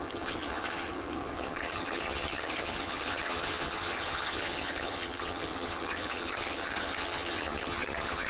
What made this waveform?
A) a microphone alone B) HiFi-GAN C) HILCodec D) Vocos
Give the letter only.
B